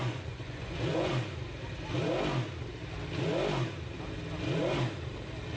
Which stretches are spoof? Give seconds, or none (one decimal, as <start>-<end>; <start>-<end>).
0.0-1.1